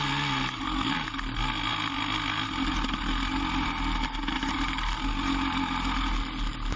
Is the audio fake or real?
real